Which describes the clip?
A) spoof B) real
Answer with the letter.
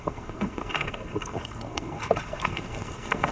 A